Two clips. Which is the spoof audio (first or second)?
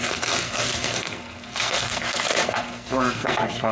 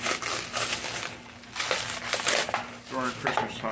first